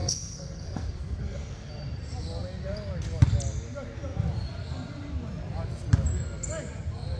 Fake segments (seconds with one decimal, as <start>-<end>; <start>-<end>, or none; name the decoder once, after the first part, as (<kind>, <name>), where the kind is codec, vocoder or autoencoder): 0.0-1.7 (codec, SNAC)